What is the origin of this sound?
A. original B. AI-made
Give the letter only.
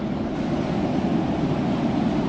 A